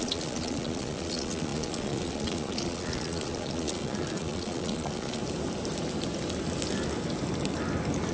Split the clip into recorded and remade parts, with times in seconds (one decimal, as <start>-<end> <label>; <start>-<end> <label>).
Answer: 0.0-5.2 remade; 5.2-8.1 recorded